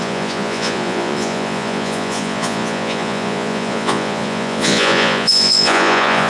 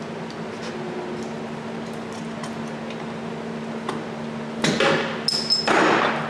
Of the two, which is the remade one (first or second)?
first